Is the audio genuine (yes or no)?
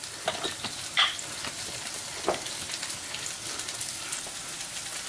yes